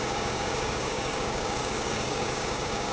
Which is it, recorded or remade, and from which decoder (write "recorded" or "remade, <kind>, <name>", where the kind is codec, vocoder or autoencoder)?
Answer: remade, codec, DAC